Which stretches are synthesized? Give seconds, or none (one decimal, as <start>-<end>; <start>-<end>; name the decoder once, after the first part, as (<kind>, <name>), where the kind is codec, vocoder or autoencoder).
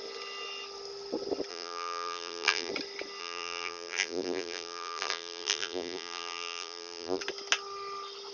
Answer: 1.5-2.7 (vocoder, BigVGAN v2); 3.2-7.2